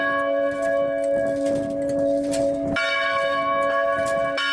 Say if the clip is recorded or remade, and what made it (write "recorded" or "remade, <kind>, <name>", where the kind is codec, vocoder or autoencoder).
recorded